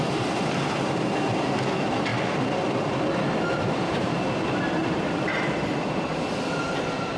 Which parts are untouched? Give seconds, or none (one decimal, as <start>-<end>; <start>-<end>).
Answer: 0.0-2.1; 4.1-4.8; 6.4-7.2